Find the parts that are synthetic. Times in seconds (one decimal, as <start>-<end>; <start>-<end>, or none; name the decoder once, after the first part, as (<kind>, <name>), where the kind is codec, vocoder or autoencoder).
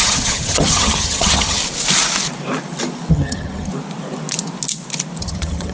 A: 0.0-1.6 (vocoder, HiFi-GAN); 3.1-3.7; 5.2-5.7